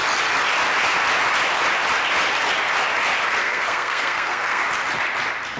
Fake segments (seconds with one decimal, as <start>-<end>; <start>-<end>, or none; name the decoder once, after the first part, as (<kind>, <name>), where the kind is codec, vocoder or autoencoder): 3.4-4.6 (codec, SNAC)